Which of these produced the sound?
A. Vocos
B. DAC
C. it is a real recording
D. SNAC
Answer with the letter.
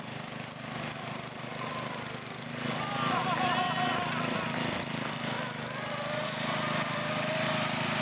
C